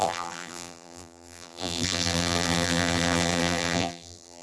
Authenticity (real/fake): fake